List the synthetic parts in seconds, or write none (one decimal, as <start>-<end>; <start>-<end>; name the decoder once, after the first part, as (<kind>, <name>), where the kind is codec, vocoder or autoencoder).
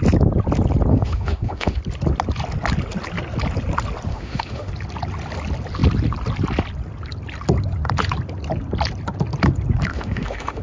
0.9-1.8 (autoencoder, DAC-VAE); 4.1-4.7; 9.9-10.6